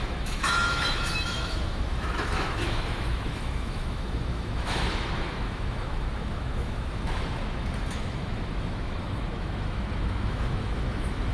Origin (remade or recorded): remade